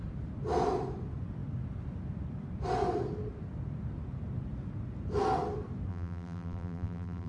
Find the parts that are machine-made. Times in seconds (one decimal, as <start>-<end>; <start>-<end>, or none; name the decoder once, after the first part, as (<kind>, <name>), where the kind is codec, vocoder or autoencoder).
5.9-7.3 (vocoder, BigVGAN v2)